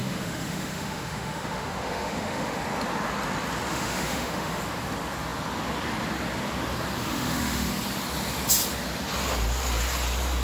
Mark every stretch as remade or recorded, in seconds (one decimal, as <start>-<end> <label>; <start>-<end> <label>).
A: 0.0-2.6 remade; 2.6-3.7 recorded; 3.7-4.6 remade; 4.6-7.0 recorded; 7.0-7.7 remade; 7.7-10.4 recorded

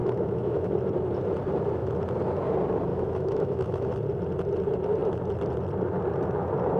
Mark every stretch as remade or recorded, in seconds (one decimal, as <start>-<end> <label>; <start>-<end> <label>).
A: 0.0-0.7 remade; 0.7-2.9 recorded; 2.9-3.9 remade; 3.9-6.8 recorded

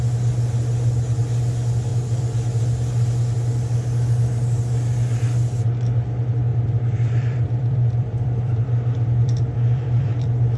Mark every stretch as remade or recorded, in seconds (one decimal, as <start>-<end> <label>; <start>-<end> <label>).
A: 0.0-1.9 recorded; 1.9-2.6 remade; 2.6-6.5 recorded; 6.5-10.6 remade

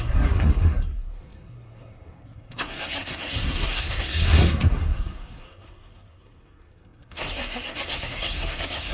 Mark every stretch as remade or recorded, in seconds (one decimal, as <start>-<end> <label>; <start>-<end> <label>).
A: 0.0-8.9 remade

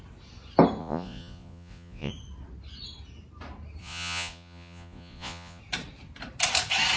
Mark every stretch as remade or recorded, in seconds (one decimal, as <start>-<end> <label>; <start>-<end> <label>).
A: 0.0-0.8 recorded; 0.8-2.1 remade; 2.1-3.8 recorded; 3.8-5.6 remade; 5.6-7.0 recorded

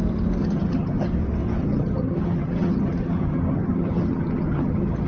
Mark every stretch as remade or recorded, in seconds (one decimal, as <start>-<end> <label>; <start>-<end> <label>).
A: 0.0-0.4 recorded; 0.4-1.1 remade; 1.1-1.6 recorded; 1.6-5.1 remade

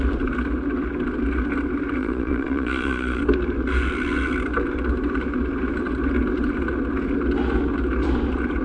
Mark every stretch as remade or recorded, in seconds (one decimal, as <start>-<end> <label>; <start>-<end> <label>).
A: 0.0-2.0 recorded; 2.0-3.2 remade; 3.2-8.6 recorded